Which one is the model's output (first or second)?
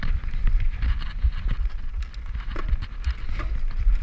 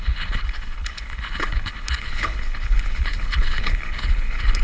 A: second